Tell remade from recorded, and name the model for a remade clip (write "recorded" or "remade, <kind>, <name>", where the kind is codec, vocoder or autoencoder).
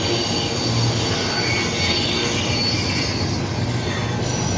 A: recorded